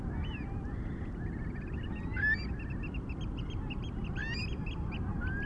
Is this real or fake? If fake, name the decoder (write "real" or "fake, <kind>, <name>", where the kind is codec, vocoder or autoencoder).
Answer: real